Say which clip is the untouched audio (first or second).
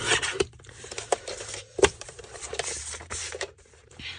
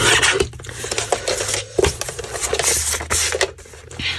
second